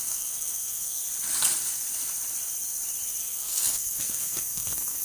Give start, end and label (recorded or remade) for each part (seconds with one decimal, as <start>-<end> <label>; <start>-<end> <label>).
0.0-1.0 remade; 1.0-3.2 recorded; 3.2-5.0 remade